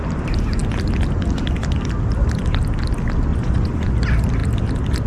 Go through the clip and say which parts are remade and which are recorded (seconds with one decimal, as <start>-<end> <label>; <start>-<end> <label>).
0.0-3.3 recorded; 3.3-3.9 remade; 3.9-5.1 recorded